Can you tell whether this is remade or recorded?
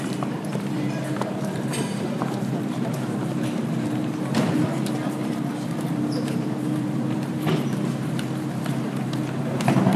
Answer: remade